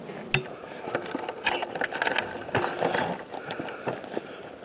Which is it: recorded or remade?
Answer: recorded